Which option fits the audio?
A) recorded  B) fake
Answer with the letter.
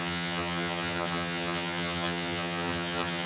B